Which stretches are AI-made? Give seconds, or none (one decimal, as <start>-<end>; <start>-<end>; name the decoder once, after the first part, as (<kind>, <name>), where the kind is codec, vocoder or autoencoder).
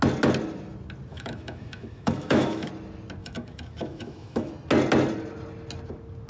1.1-2.7 (autoencoder, DAC-VAE); 3.2-4.5